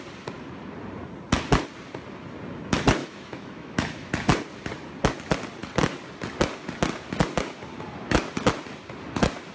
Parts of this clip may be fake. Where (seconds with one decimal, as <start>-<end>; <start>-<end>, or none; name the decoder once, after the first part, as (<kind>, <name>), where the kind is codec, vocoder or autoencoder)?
3.0-4.1 (autoencoder, DAC-VAE)